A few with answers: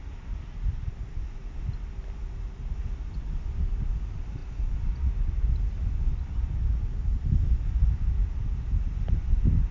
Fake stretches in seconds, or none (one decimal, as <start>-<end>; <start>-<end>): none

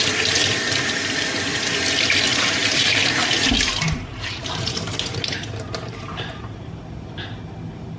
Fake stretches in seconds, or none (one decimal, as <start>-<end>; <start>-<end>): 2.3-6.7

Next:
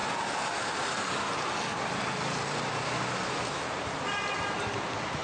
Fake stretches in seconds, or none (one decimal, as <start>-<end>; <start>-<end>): none

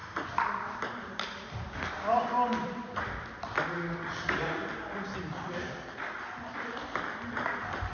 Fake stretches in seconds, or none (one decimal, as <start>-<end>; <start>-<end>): 0.0-3.0

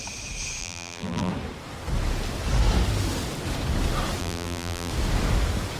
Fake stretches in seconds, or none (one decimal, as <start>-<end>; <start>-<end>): 0.6-1.3; 4.2-4.9

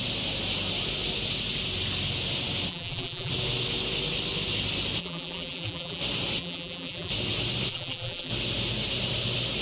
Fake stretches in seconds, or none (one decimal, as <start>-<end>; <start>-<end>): 2.7-3.3; 5.0-6.0; 6.4-7.1; 7.7-8.3

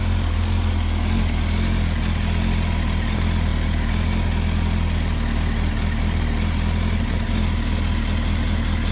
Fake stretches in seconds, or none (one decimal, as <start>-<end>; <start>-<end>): none